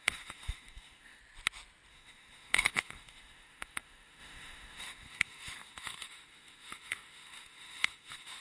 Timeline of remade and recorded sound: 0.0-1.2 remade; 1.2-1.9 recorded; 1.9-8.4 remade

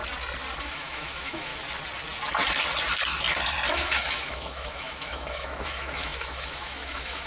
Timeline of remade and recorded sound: 0.0-0.6 recorded; 0.6-1.5 remade; 1.5-3.7 recorded; 3.7-7.3 remade

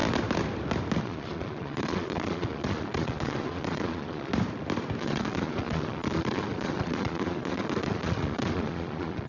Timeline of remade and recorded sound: 0.0-1.0 recorded; 1.0-4.3 remade; 4.3-5.0 recorded; 5.0-9.3 remade

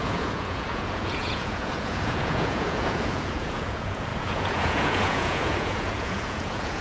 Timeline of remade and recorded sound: 0.0-6.8 remade